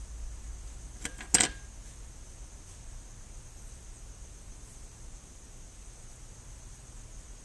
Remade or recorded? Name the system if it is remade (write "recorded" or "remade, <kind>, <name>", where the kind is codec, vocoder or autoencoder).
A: recorded